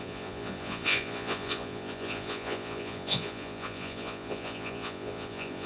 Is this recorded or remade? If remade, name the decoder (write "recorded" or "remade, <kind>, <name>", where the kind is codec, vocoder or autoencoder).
remade, vocoder, Vocos